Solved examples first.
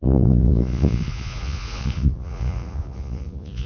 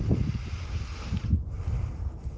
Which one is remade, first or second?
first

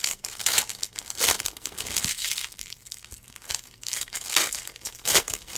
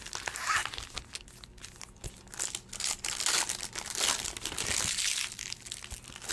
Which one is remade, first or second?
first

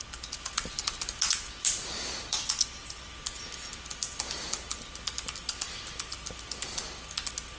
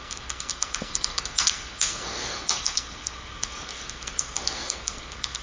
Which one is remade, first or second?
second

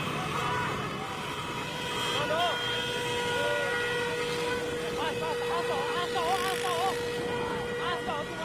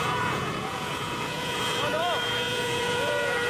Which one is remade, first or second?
second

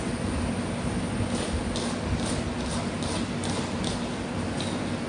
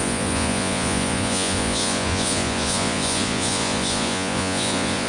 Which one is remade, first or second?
second